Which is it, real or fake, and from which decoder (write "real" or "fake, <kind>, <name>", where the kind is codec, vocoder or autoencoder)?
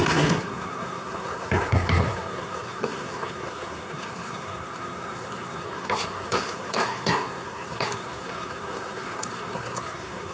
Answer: fake, codec, SNAC